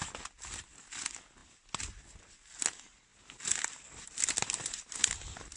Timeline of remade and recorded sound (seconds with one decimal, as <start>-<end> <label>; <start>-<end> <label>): 0.0-5.6 recorded